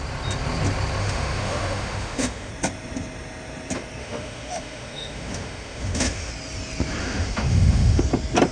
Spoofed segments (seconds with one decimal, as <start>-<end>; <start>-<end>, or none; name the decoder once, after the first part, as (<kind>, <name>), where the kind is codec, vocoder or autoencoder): 1.0-2.5 (autoencoder, DAC-VAE); 4.0-6.3; 7.0-8.0